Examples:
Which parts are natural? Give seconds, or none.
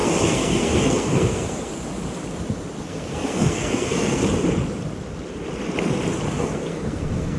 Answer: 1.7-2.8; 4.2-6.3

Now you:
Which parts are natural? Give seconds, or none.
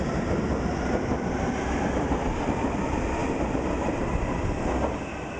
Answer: 0.0-5.4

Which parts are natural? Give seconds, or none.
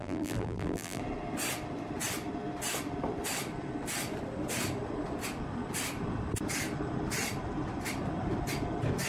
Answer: 1.0-9.1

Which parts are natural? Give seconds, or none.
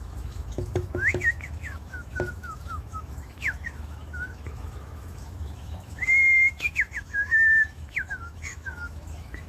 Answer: none